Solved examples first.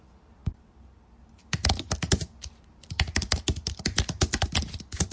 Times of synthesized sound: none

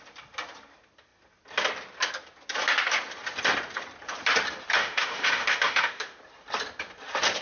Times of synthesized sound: 4.8-6.2

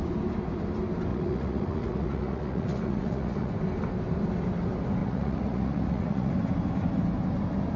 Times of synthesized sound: 1.1-3.5; 5.0-6.3

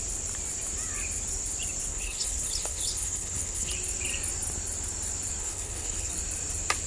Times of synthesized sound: 1.9-3.7; 5.4-6.1